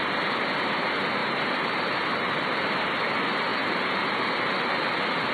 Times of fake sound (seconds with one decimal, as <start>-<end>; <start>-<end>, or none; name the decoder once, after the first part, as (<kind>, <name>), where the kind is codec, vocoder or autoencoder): 1.2-2.7 (vocoder, BigVGAN v2); 3.5-5.3